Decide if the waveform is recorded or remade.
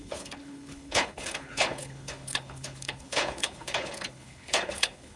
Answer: remade